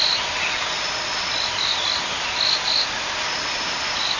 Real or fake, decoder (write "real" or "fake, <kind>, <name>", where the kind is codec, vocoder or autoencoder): real